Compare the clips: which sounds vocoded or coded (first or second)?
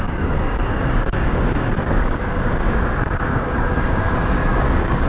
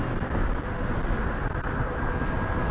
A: first